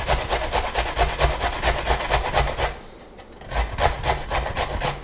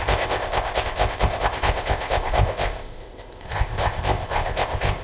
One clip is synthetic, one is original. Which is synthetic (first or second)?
second